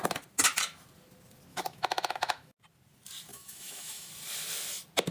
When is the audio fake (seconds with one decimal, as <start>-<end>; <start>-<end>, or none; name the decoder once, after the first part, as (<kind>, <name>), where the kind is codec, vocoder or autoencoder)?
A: 1.5-2.6 (autoencoder, DAC-VAE); 3.3-4.1